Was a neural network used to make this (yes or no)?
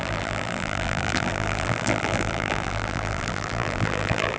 yes